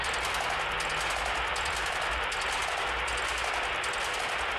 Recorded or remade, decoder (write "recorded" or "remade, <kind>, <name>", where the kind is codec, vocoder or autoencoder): recorded